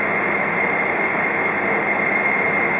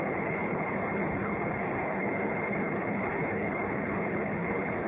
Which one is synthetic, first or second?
second